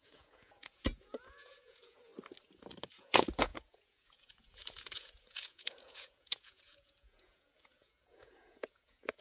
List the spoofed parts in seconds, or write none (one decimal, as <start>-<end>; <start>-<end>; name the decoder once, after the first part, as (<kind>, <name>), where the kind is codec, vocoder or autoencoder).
0.0-2.1 (vocoder, Vocos); 2.9-9.2

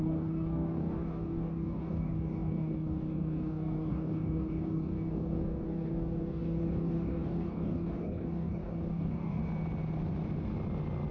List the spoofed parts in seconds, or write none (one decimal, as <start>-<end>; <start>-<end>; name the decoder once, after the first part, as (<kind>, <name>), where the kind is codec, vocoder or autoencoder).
0.0-9.4 (codec, DAC)

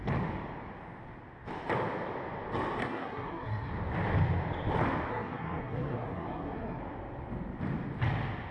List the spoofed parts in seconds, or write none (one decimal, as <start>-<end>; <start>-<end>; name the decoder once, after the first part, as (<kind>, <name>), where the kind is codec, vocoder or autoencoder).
2.8-3.7 (codec, SNAC); 5.1-6.8

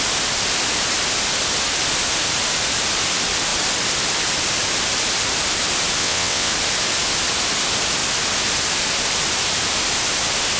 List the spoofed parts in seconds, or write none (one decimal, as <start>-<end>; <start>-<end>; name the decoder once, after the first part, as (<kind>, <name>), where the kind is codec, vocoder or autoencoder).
6.0-6.5 (vocoder, WaveNeXt)

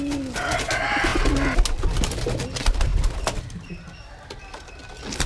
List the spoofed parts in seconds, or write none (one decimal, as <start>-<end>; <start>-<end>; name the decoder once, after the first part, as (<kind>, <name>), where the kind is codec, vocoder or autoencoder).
none

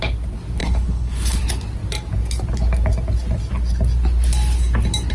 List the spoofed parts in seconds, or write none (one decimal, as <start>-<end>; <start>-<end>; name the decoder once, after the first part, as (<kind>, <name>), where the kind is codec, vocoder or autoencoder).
0.6-1.4 (codec, HILCodec)

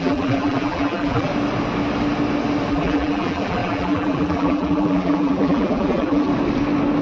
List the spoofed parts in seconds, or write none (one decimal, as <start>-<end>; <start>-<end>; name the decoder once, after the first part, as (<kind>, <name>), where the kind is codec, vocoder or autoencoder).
0.0-1.3 (vocoder, BigVGAN v2); 2.7-6.3